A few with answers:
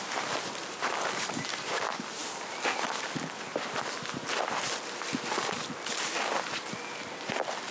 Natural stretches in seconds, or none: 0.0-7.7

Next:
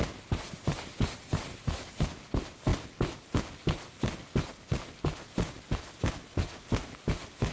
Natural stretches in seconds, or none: 0.0-7.5

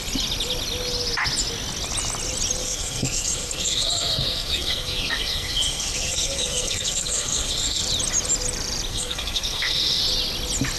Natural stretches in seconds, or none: 0.0-2.6; 7.8-8.9; 10.0-10.8

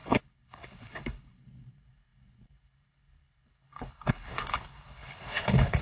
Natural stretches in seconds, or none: none

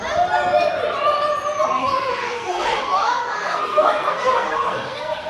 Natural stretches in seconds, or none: 0.0-1.8

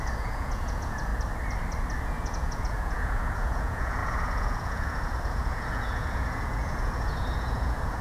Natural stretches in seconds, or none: 1.1-2.0